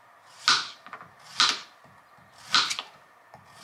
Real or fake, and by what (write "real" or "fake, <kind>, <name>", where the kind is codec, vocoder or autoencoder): real